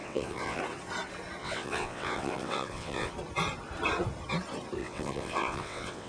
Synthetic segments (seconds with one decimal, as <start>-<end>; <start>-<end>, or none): 0.0-0.6; 1.4-3.1; 4.8-6.1